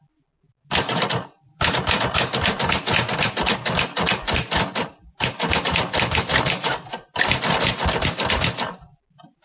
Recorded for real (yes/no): yes